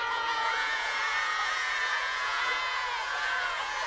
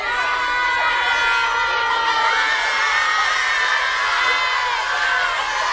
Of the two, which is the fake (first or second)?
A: first